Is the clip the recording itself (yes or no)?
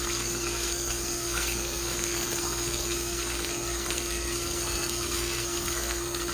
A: no